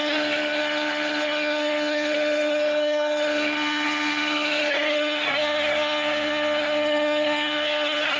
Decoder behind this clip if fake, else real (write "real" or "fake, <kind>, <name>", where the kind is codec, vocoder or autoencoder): fake, codec, SNAC